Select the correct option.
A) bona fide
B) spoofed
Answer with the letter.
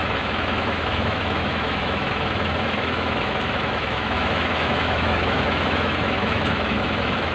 B